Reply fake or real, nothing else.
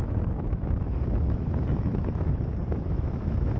fake